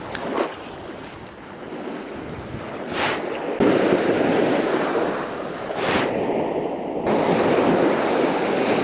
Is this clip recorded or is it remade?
recorded